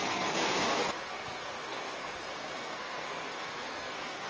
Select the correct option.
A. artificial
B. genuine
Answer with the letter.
A